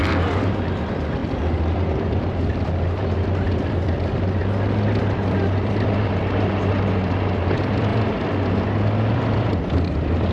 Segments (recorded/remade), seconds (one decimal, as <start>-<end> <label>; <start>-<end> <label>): 0.0-4.4 remade; 4.4-5.0 recorded; 5.0-7.9 remade; 7.9-9.0 recorded; 9.0-10.3 remade